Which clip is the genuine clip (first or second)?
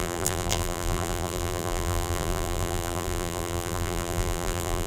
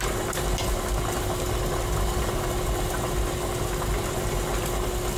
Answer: second